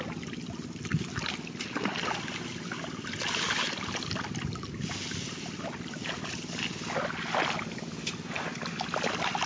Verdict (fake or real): real